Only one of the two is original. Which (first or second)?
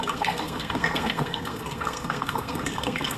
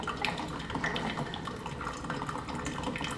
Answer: second